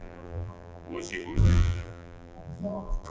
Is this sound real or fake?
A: fake